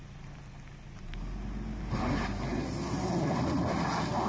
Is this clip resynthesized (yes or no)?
no